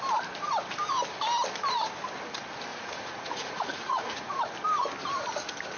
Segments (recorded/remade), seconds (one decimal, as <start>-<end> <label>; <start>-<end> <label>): 0.0-2.7 recorded; 2.7-4.4 remade; 4.4-5.8 recorded